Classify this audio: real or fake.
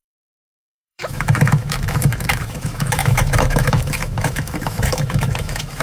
fake